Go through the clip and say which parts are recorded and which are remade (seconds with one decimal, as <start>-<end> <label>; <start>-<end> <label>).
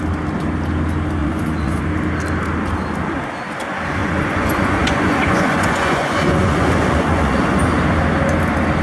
0.0-1.2 recorded; 1.2-1.8 remade; 1.8-4.0 recorded; 4.0-7.6 remade; 7.6-8.8 recorded